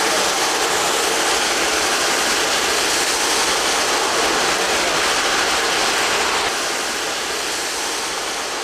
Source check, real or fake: real